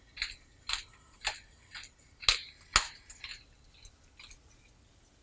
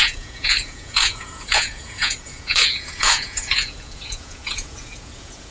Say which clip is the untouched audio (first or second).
first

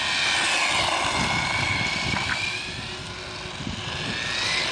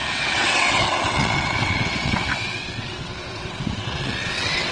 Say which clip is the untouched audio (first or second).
first